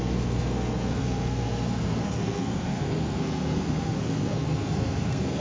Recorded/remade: remade